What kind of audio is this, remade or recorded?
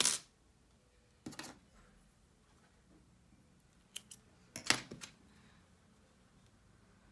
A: recorded